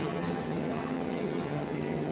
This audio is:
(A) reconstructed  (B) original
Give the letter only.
A